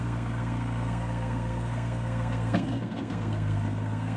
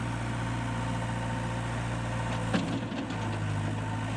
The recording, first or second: second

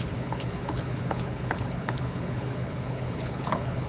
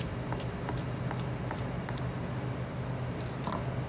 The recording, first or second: second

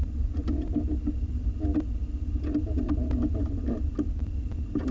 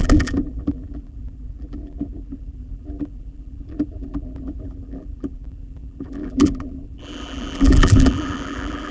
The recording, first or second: first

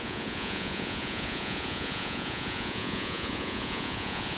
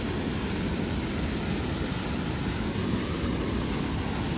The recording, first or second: second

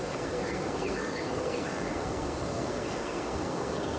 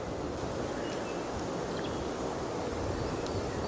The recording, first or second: second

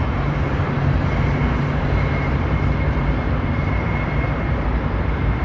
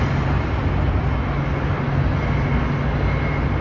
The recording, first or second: second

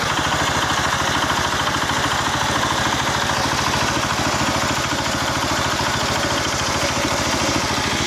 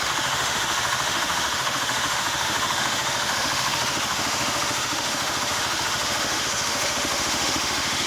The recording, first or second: first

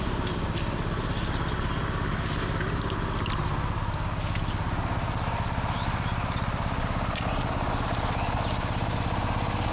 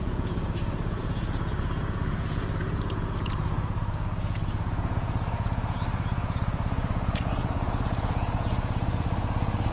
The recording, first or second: first